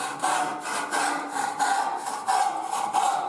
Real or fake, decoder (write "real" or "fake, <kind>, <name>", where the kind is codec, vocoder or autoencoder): real